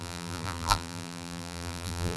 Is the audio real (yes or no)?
no